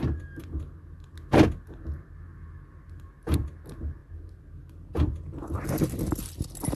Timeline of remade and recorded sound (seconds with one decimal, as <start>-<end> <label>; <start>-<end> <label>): 0.0-6.7 recorded